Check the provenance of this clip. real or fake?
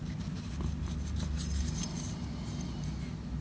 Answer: real